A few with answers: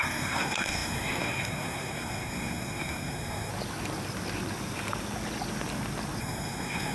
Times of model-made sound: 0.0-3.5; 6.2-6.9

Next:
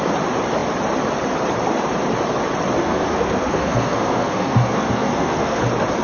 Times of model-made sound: 2.8-5.6

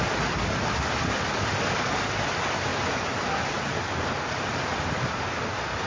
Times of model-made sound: none

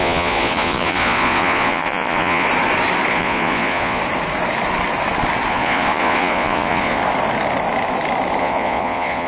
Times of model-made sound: 0.0-2.5; 3.1-4.0; 5.5-7.0; 8.4-9.3

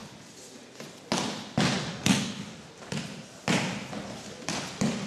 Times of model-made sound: 1.9-2.4

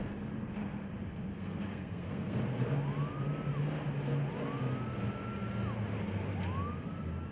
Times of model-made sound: 1.3-2.4

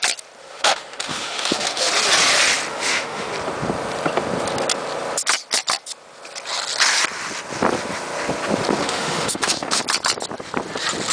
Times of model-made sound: 0.4-1.9; 2.7-3.3; 8.8-9.8